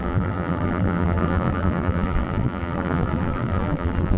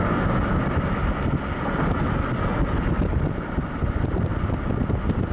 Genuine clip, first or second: second